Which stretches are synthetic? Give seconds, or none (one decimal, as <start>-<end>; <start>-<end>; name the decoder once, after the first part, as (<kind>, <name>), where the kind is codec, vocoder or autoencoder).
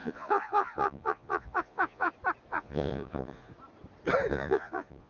0.0-2.1 (vocoder, Vocos); 2.5-3.5; 4.3-5.1